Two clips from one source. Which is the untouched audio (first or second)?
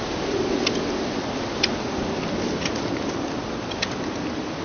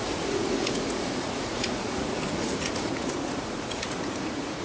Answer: first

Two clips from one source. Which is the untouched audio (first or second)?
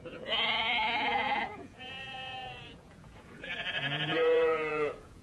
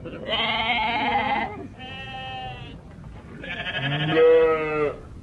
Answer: second